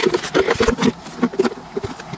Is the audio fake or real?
real